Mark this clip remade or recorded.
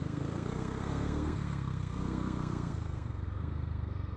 remade